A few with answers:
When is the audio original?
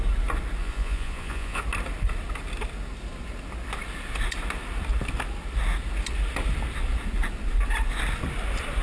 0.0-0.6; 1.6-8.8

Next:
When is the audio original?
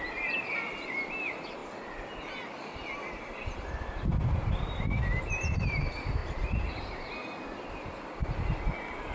1.6-3.4; 6.2-6.8; 7.2-9.1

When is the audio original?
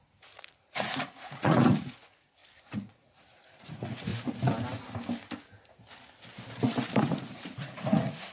2.4-2.9; 4.1-7.0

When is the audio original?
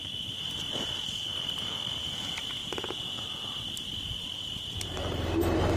0.6-5.8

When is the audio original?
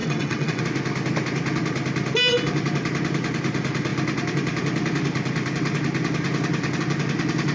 0.6-7.5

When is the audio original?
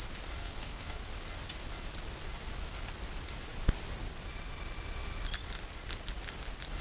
0.0-0.4; 1.0-6.8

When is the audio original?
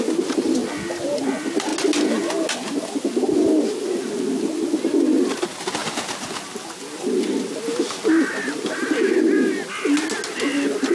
0.0-10.9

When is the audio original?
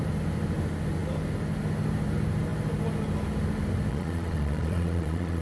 0.0-3.9